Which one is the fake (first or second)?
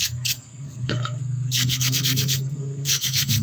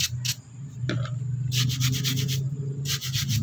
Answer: first